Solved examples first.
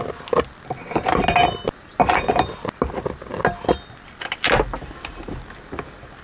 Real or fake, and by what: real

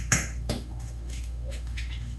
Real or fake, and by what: fake, autoencoder, DAC-VAE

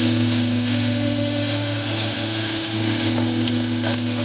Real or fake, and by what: fake, autoencoder, DAC-VAE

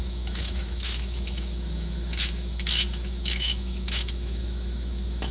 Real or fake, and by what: fake, autoencoder, DAC-VAE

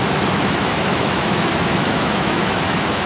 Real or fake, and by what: fake, autoencoder, DAC-VAE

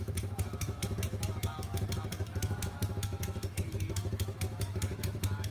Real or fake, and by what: fake, autoencoder, DAC-VAE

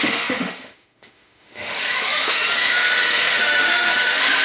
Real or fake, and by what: fake, autoencoder, DAC-VAE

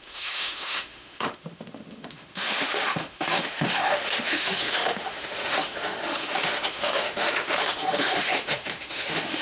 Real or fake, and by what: fake, autoencoder, DAC-VAE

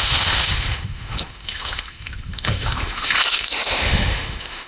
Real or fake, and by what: fake, autoencoder, DAC-VAE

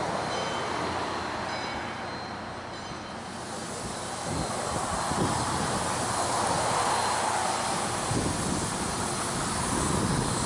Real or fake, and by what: real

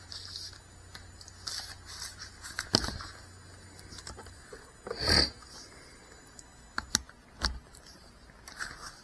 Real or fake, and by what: real